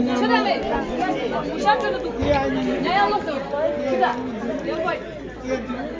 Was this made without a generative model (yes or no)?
yes